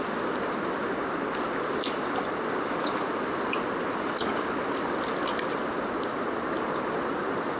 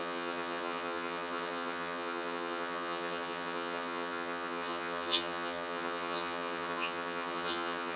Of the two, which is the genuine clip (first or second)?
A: first